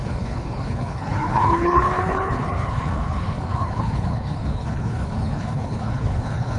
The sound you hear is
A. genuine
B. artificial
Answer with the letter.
B